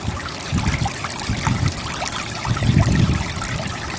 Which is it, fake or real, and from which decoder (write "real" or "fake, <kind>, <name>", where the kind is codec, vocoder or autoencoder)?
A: real